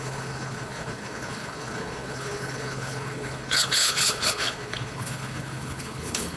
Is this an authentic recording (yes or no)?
no